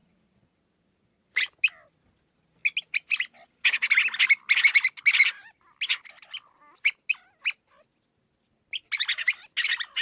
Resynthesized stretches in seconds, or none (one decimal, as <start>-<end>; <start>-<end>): 0.0-1.4